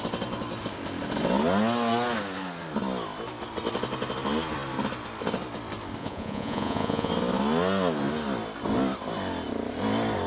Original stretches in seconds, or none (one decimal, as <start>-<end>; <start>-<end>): 0.0-6.0; 7.1-10.3